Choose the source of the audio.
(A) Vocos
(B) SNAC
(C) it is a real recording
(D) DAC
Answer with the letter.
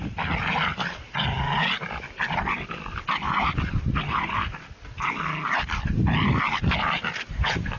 C